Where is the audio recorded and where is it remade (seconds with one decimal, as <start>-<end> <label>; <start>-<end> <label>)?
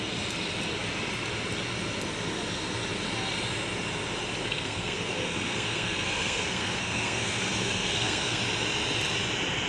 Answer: 0.0-4.4 recorded; 4.4-8.4 remade; 8.4-9.7 recorded